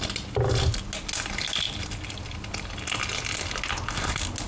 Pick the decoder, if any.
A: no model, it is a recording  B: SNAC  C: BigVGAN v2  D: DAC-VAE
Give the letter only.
A